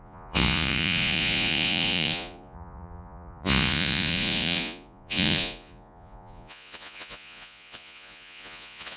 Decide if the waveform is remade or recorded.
remade